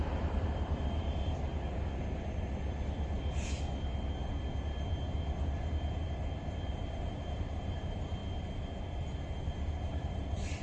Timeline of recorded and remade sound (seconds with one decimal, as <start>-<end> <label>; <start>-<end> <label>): 0.0-1.5 remade; 1.5-5.4 recorded; 5.4-6.0 remade; 6.0-6.7 recorded; 6.7-8.2 remade; 8.2-9.4 recorded; 9.4-10.6 remade